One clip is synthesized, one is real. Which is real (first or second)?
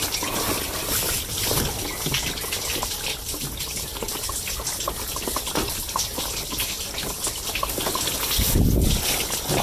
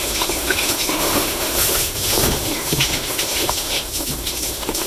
first